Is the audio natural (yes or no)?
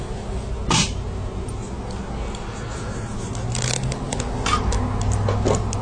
yes